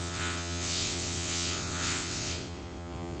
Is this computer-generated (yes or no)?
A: yes